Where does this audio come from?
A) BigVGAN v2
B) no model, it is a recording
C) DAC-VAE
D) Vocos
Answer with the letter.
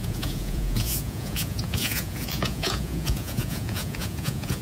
D